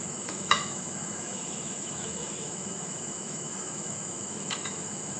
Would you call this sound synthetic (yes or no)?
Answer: yes